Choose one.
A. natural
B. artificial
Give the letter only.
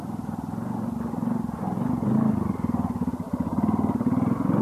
A